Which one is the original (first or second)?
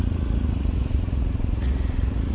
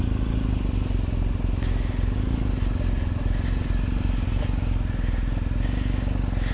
second